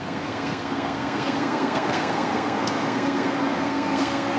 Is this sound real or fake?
fake